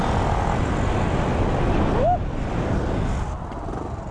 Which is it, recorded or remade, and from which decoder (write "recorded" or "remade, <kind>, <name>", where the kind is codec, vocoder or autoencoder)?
recorded